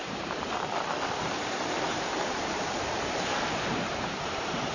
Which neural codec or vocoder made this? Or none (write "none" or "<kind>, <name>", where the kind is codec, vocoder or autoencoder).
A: vocoder, BigVGAN v2